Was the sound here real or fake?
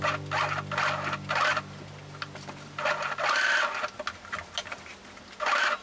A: real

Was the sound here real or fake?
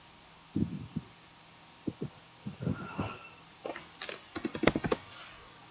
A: real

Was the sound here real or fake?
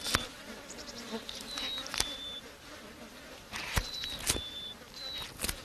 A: fake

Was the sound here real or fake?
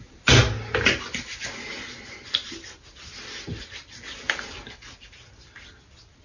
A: real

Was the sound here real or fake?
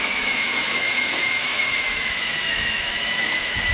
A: fake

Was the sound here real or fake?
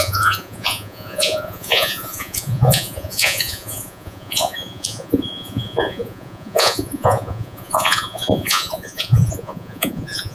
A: fake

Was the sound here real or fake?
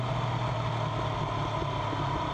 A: real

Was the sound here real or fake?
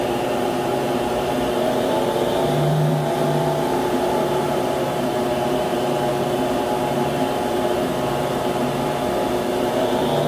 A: fake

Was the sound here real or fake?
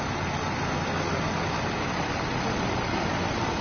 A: real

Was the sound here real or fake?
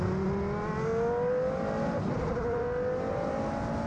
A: real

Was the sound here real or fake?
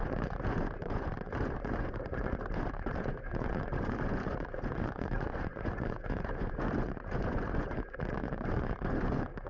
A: fake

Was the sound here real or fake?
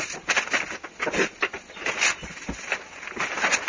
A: real